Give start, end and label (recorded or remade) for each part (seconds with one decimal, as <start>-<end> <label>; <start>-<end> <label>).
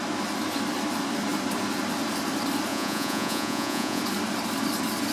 0.0-2.7 recorded; 2.7-4.0 remade; 4.0-5.1 recorded